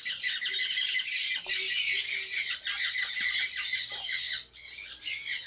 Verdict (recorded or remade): recorded